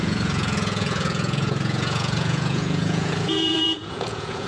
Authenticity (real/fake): fake